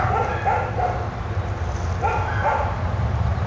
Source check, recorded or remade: recorded